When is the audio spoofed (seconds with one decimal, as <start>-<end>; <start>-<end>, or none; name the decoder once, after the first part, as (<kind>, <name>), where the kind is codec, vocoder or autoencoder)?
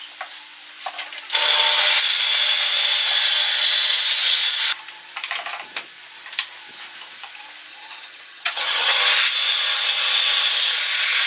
7.7-9.0 (vocoder, HiFi-GAN)